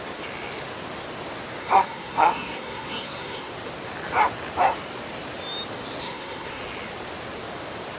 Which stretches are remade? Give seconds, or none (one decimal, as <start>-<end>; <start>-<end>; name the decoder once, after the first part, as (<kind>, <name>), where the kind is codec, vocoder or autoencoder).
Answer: 1.6-3.5 (codec, SNAC); 6.0-6.6